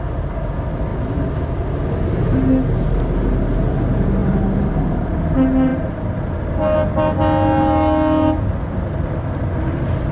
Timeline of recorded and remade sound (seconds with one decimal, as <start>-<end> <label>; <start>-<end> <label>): 0.0-5.7 recorded; 5.7-6.2 remade; 6.2-10.1 recorded